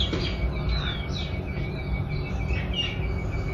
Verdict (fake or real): real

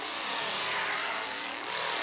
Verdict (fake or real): real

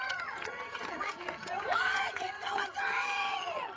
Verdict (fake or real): fake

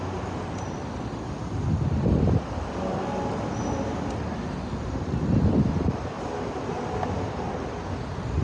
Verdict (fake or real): real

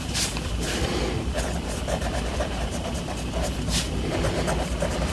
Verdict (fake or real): fake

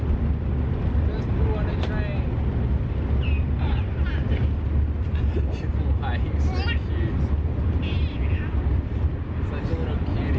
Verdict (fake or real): real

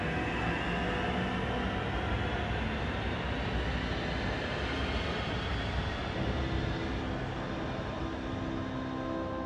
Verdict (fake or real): real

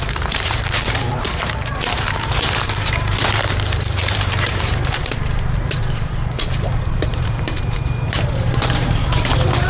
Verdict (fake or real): fake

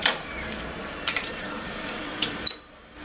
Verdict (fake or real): fake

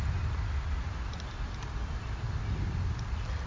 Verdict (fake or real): real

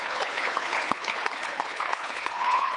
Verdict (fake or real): fake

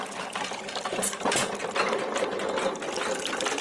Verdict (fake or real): real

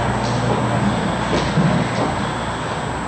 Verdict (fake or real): real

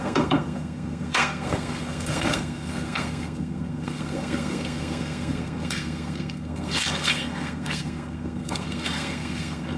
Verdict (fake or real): fake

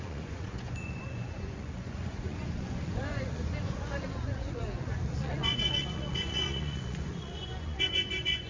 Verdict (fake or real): fake